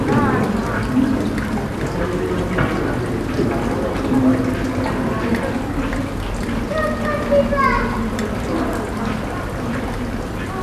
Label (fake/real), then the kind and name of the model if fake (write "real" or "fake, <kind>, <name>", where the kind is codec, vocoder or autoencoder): real